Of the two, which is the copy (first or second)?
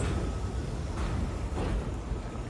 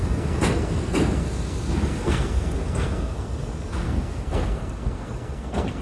second